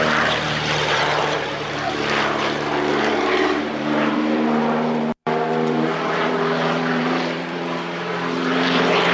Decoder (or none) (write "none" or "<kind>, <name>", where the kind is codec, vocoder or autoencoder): vocoder, BigVGAN v2